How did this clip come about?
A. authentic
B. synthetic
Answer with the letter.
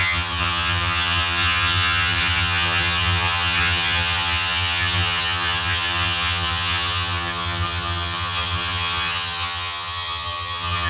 B